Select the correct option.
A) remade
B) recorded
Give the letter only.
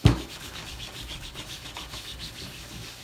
A